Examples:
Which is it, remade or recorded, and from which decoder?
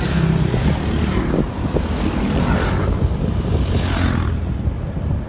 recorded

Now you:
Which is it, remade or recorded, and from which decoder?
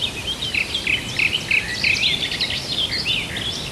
recorded